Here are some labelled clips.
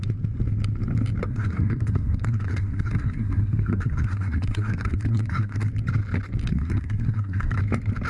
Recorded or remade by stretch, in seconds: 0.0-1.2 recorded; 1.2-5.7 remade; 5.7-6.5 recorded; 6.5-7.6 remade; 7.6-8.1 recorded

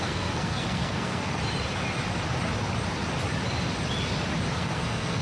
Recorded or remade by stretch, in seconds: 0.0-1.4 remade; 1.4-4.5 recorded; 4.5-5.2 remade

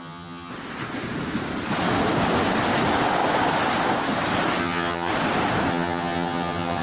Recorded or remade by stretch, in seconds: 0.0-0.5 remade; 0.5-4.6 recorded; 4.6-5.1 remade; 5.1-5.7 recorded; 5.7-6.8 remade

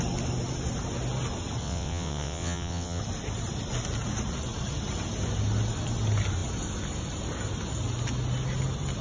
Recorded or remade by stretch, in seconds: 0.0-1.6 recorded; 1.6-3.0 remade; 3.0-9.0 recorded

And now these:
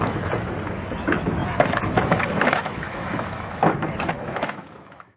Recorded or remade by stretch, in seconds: 0.0-5.2 remade

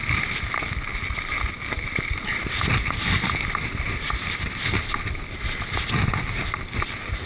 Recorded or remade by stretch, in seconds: 0.0-7.3 recorded